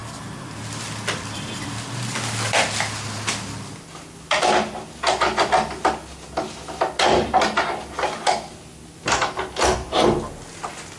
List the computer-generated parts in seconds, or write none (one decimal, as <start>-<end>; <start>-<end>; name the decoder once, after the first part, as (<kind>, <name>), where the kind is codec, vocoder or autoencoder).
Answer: 0.0-2.7 (vocoder, BigVGAN v2)